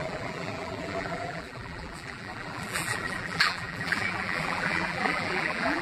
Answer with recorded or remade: remade